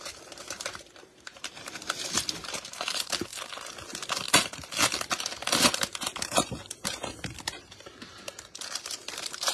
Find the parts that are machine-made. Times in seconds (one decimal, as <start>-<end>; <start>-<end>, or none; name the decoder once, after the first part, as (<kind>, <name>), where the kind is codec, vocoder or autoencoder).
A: 0.0-3.3 (vocoder, BigVGAN v2); 5.6-7.9; 9.1-9.5